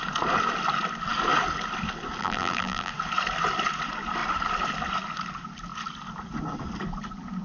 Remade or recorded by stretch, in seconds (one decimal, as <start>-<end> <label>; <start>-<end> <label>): 0.0-2.2 recorded; 2.2-2.9 remade; 2.9-7.4 recorded